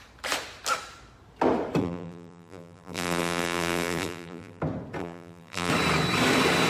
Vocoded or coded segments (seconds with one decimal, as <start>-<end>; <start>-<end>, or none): 1.8-4.6; 5.0-5.7